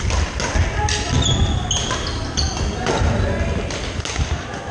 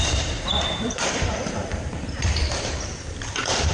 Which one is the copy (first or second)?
second